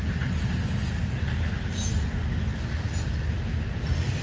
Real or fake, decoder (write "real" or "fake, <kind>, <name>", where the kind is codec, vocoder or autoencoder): real